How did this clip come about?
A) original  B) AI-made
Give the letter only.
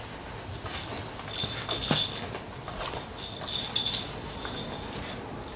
A